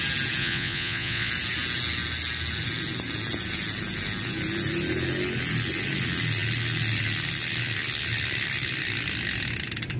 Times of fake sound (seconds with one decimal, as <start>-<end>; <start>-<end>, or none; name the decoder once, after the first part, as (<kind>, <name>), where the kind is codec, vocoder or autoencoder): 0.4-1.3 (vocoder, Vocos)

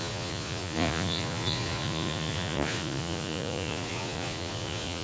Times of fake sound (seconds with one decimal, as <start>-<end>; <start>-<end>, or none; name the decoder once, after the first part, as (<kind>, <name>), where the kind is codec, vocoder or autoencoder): 0.0-5.0 (vocoder, Vocos)

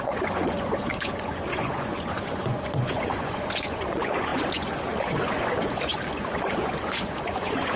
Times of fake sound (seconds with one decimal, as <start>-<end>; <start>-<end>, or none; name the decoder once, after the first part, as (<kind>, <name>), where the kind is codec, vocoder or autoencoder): 0.0-7.8 (vocoder, Vocos)